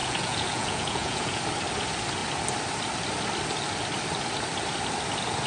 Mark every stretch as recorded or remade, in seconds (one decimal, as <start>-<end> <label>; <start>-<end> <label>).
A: 0.0-1.4 remade; 1.4-5.5 recorded